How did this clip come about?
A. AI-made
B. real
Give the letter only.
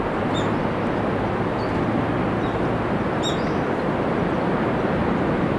B